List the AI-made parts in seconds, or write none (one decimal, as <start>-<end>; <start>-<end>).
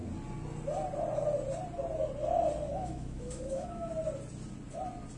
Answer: 2.7-3.9